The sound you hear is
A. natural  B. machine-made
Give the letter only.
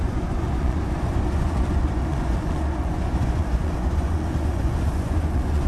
B